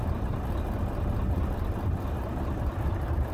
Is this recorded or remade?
recorded